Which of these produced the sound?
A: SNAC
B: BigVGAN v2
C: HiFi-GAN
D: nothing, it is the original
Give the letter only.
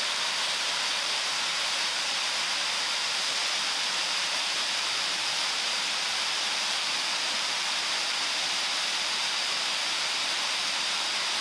B